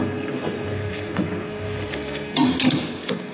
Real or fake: fake